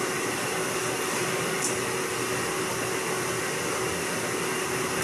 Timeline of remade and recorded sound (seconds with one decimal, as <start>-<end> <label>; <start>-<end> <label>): 0.0-5.0 recorded

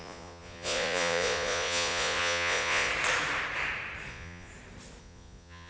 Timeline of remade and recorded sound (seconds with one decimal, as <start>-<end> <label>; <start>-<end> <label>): 0.0-2.9 remade; 2.9-4.1 recorded; 4.1-4.5 remade; 4.5-5.0 recorded; 5.0-5.7 remade

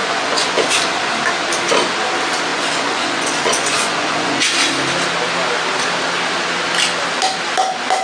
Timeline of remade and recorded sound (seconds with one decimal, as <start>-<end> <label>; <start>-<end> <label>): 0.0-1.1 remade; 1.1-2.5 recorded; 2.5-4.5 remade; 4.5-8.0 recorded

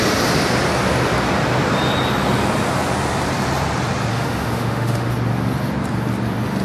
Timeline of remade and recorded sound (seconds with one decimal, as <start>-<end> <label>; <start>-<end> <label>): 0.0-4.1 recorded; 4.1-5.1 remade; 5.1-6.6 recorded

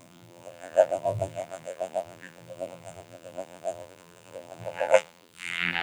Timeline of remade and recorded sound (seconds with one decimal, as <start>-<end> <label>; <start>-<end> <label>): 0.0-5.8 remade

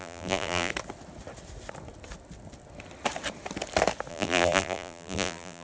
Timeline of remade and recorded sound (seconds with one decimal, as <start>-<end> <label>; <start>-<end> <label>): 0.0-0.7 remade; 0.7-4.1 recorded; 4.1-5.6 remade

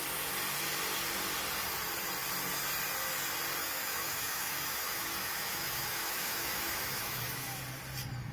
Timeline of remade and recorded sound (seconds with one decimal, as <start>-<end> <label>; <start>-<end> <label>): 0.0-3.6 recorded; 3.6-7.6 remade; 7.6-8.3 recorded